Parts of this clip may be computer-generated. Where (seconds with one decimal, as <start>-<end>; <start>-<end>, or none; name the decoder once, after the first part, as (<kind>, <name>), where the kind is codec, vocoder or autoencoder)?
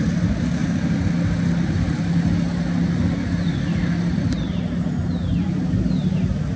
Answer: none